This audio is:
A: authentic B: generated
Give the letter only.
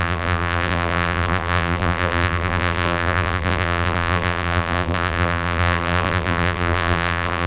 B